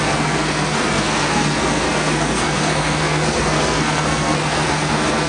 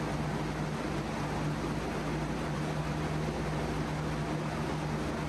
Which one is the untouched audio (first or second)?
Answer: second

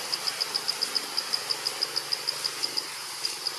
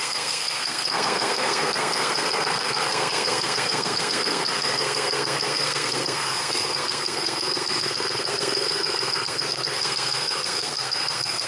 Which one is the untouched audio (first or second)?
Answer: first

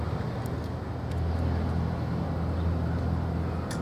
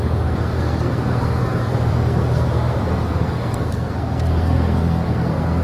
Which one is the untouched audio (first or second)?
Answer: first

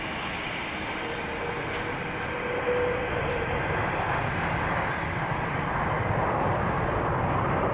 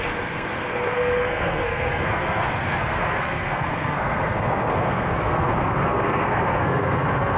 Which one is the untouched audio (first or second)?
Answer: first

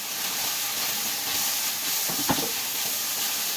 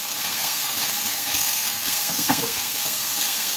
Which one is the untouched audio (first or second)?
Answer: first